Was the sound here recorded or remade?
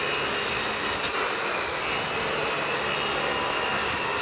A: recorded